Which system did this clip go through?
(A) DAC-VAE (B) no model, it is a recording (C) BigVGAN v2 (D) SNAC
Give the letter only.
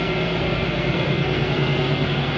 D